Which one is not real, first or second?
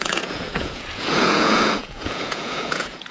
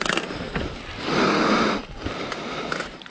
first